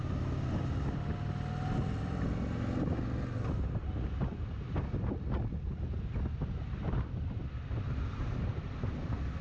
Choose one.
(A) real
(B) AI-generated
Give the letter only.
A